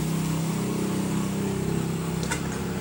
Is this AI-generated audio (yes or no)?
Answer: no